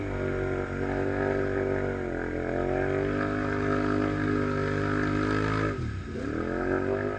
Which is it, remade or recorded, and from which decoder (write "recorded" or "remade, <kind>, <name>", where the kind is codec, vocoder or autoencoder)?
recorded